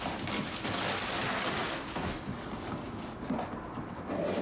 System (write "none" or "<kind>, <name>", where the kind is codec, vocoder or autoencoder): none